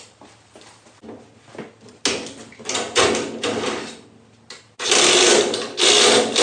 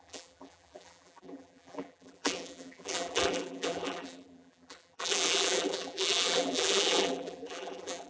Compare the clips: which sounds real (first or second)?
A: first